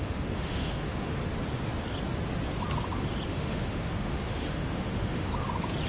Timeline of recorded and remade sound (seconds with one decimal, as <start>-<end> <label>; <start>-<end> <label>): 0.0-1.2 remade; 1.2-3.3 recorded; 3.3-5.3 remade; 5.3-5.9 recorded